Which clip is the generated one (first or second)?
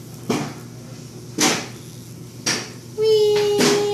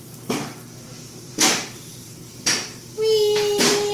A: second